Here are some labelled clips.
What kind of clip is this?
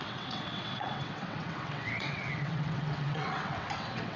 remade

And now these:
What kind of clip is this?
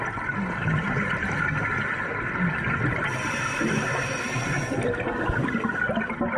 recorded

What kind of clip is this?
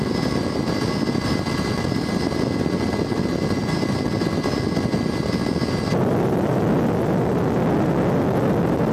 recorded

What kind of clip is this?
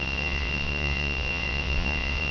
remade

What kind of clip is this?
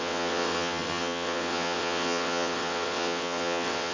remade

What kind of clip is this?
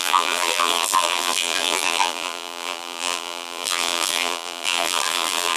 remade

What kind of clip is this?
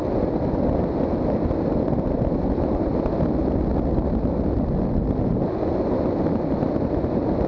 recorded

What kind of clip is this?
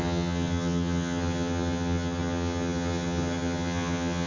remade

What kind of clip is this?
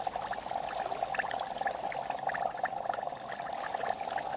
recorded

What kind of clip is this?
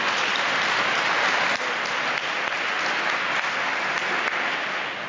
recorded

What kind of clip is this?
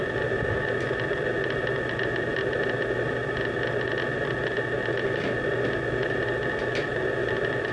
recorded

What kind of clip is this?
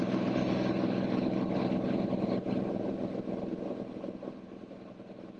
recorded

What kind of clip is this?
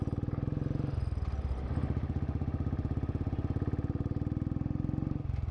recorded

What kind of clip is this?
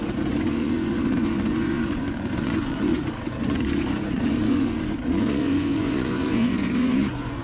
remade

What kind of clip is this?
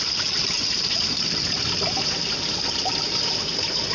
remade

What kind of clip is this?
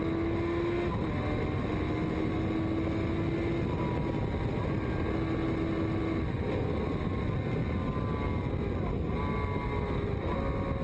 recorded